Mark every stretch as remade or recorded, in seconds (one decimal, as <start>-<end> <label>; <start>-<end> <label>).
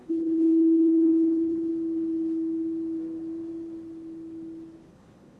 0.0-1.7 remade; 1.7-4.9 recorded; 4.9-5.4 remade